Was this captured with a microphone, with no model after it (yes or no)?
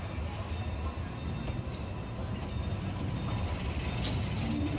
yes